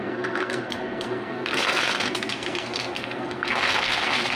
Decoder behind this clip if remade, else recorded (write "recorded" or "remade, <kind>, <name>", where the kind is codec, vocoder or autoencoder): remade, codec, SNAC